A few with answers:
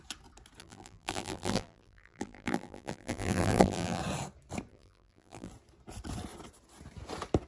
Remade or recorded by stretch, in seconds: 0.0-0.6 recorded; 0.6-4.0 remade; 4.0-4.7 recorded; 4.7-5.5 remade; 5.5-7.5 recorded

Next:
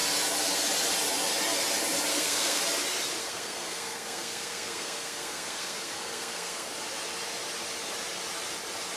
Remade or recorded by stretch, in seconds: 0.0-2.1 recorded; 2.1-2.6 remade; 2.6-3.2 recorded; 3.2-6.7 remade; 6.7-9.0 recorded

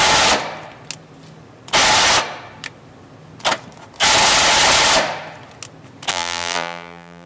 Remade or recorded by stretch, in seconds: 0.0-6.1 recorded; 6.1-7.3 remade

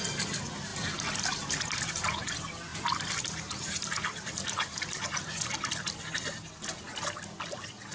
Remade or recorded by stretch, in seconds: 0.0-7.9 recorded

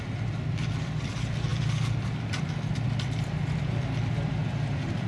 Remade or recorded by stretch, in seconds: 0.0-5.1 remade

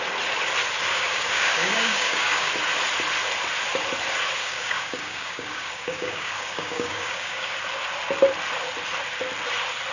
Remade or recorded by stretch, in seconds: 0.0-0.9 recorded; 0.9-2.5 remade; 2.5-4.4 recorded; 4.4-7.5 remade; 7.5-9.9 recorded